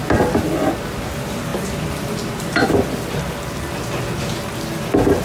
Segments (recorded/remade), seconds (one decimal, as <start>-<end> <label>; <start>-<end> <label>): 0.0-5.2 recorded